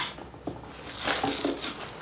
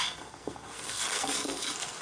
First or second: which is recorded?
first